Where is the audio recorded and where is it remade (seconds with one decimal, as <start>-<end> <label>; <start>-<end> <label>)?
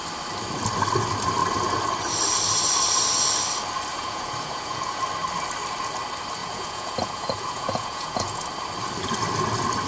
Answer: 0.0-3.9 recorded; 3.9-5.0 remade; 5.0-6.4 recorded; 6.4-8.4 remade; 8.4-9.9 recorded